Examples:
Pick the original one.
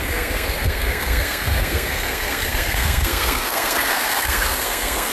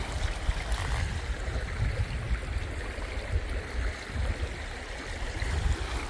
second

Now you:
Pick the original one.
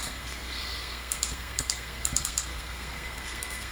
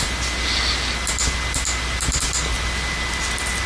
second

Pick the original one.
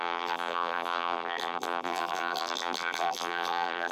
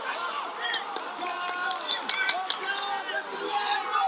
second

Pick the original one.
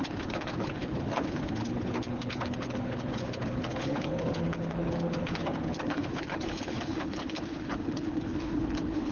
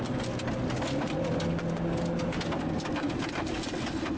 second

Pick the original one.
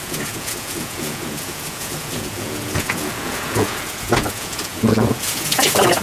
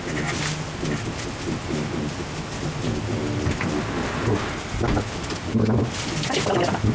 second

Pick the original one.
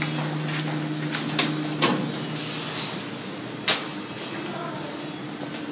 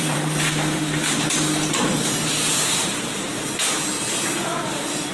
first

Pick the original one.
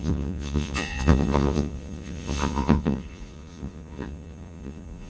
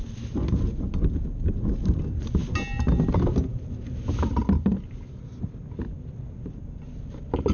second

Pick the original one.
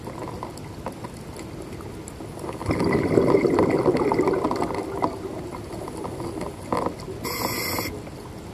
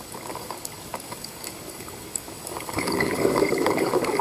first